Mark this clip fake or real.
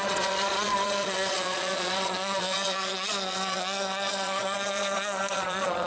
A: fake